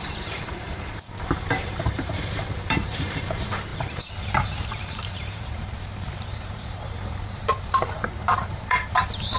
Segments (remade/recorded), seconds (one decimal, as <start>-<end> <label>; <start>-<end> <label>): 0.0-9.4 remade